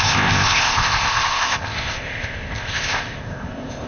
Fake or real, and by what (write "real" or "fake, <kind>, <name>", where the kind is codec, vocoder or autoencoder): fake, codec, ZipCodec